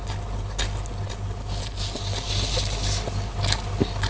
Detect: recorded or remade recorded